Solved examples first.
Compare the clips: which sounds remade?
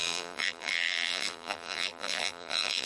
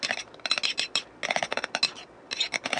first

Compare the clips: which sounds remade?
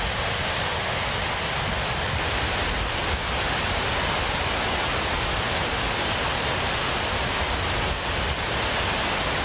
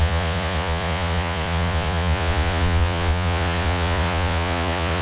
second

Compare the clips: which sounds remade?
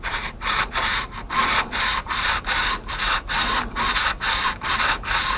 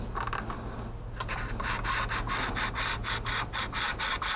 first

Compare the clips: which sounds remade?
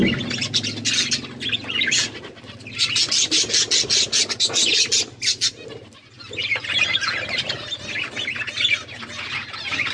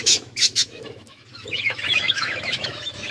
second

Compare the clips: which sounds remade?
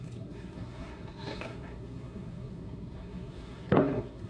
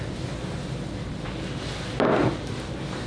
first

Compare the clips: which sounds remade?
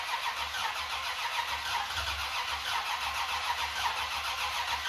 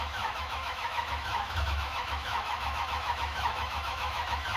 second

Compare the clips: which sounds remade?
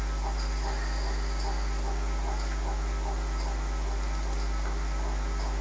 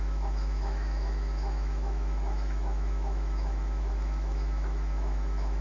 second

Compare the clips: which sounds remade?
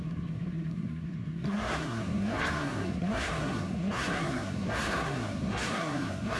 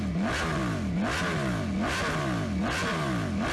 first